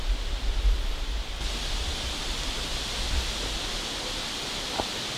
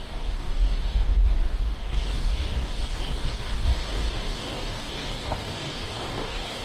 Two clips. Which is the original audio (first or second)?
first